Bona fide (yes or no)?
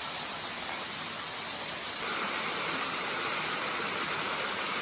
yes